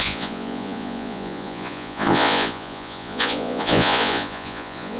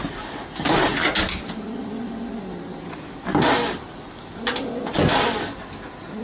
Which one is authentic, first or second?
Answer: second